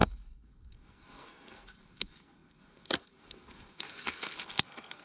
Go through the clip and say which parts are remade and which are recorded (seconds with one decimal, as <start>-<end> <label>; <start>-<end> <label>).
0.0-5.0 remade